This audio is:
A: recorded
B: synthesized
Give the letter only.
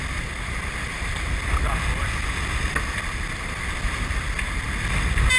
A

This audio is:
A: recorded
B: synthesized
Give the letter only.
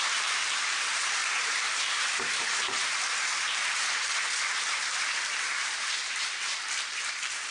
B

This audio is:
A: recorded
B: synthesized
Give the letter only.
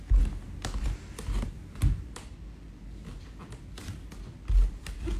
A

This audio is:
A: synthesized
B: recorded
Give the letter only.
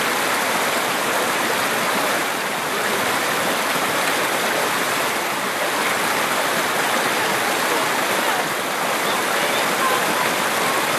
B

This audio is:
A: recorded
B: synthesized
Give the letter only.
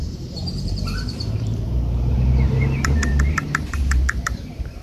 B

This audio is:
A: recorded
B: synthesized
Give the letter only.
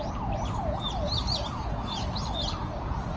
A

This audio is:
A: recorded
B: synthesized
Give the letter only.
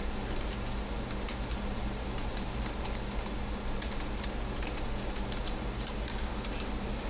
A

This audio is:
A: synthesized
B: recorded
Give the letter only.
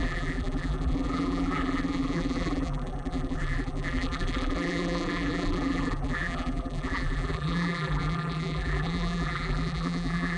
A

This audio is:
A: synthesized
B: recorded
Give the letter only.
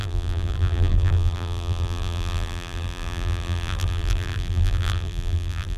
A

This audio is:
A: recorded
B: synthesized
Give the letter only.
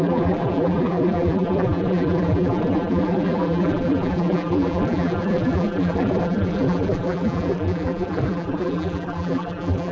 B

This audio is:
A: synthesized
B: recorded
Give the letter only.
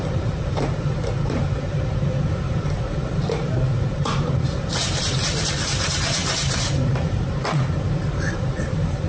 A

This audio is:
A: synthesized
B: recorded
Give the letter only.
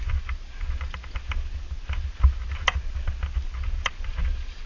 B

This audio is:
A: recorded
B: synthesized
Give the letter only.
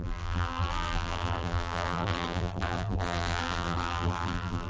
B